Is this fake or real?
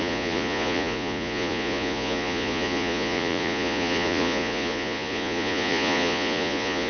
fake